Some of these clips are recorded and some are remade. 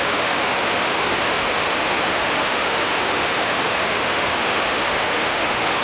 remade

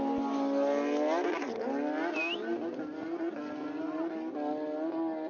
recorded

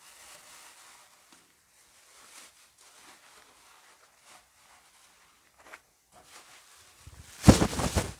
recorded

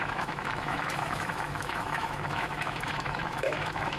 remade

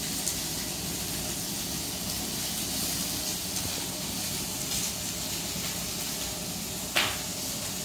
recorded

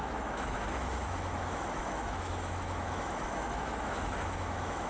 remade